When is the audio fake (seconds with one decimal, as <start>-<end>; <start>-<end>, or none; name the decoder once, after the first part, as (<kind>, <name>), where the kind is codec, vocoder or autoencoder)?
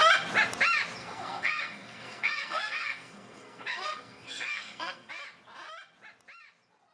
1.0-5.1 (codec, SNAC)